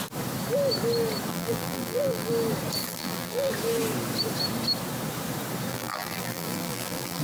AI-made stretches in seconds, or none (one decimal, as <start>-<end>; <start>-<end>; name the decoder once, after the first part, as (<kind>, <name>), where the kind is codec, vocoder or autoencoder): 1.3-2.3 (vocoder, BigVGAN v2); 2.8-3.5; 5.7-7.2